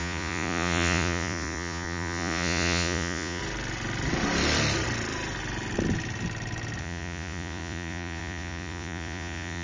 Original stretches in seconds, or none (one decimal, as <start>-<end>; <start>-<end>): 3.4-6.8